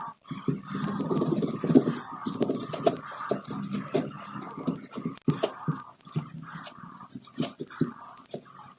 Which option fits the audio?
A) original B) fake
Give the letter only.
A